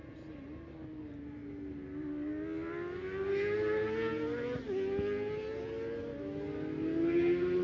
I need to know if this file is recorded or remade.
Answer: recorded